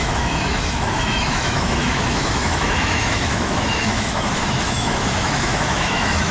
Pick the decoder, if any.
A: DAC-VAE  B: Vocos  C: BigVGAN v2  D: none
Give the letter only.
A